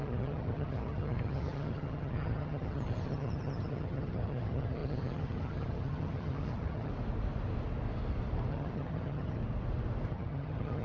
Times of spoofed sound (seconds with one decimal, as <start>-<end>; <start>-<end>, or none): 0.0-6.9; 8.5-9.4; 10.1-10.8